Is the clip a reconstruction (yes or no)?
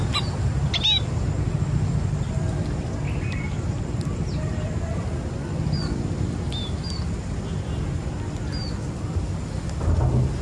no